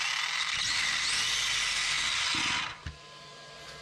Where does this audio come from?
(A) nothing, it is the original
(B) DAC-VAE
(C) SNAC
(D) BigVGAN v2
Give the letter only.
A